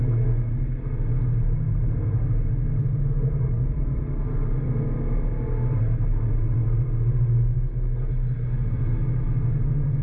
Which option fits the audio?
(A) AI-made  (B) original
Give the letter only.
B